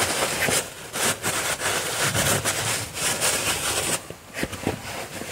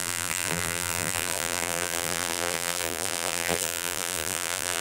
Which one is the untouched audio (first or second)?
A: first